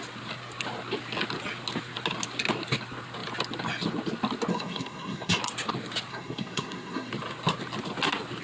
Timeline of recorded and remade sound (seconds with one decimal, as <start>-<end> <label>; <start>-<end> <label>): 0.0-4.5 recorded; 4.5-5.4 remade; 5.4-6.1 recorded; 6.1-7.1 remade; 7.1-8.4 recorded